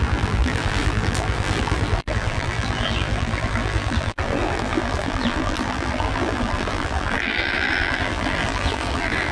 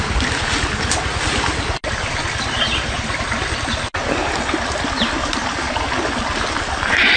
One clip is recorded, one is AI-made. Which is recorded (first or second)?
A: second